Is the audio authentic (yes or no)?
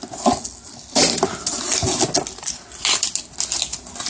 yes